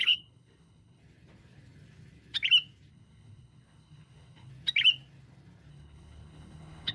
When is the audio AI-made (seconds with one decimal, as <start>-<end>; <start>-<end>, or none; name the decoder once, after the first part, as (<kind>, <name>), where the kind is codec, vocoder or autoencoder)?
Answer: 0.0-1.0 (codec, HILCodec); 2.9-4.5; 5.7-6.9